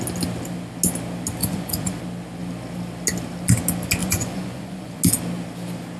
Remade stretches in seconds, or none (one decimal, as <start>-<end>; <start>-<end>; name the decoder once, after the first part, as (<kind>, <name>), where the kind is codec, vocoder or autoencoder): 1.4-2.0 (vocoder, Vocos); 4.0-5.0